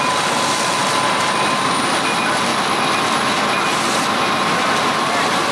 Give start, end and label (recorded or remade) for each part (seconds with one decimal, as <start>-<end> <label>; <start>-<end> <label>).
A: 0.0-5.5 recorded